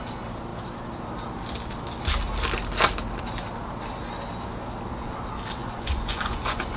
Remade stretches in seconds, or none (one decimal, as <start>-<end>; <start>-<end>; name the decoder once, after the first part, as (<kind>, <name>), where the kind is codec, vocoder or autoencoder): 5.6-6.8 (vocoder, Vocos)